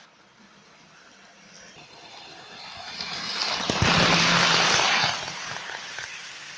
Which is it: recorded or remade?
recorded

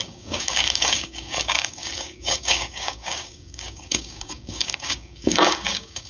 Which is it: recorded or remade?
remade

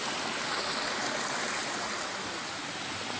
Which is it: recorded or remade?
recorded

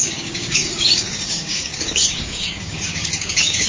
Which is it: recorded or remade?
remade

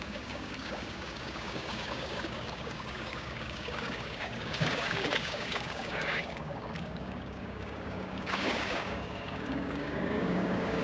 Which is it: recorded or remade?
remade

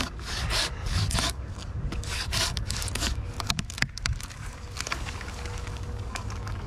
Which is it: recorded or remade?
remade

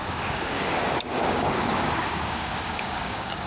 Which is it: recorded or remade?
remade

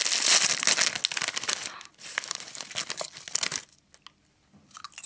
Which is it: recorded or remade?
recorded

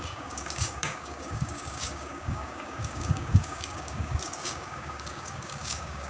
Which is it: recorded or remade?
remade